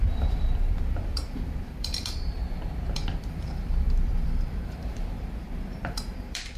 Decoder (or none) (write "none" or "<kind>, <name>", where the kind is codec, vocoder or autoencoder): vocoder, BigVGAN v2